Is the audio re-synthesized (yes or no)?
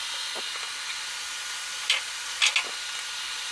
no